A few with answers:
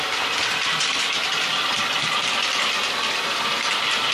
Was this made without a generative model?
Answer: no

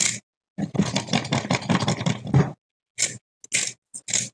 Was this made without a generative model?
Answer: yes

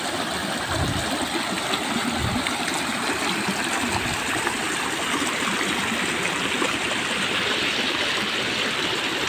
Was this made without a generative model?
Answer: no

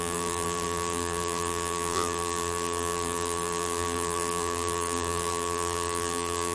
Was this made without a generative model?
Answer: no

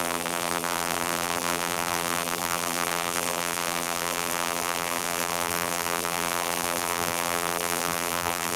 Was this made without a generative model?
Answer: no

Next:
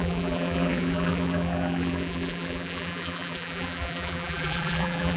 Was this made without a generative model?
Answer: no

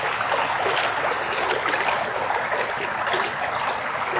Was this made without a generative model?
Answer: yes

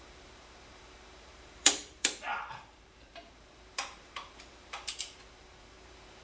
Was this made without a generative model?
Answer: no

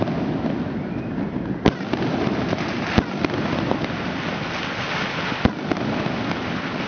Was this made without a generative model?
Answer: yes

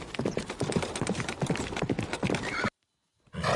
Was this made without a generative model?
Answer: yes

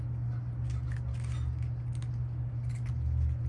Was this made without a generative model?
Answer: yes